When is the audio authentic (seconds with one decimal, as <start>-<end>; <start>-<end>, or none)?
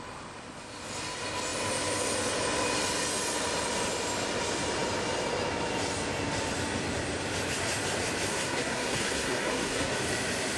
0.0-8.3; 9.9-10.6